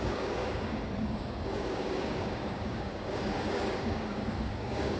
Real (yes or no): no